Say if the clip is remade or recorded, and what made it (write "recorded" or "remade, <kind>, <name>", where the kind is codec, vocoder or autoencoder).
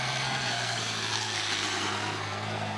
remade, codec, SNAC